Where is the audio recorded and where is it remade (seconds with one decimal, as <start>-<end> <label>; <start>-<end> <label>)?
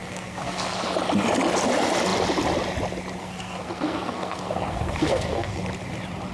0.0-0.9 remade; 0.9-3.2 recorded; 3.2-5.6 remade; 5.6-6.3 recorded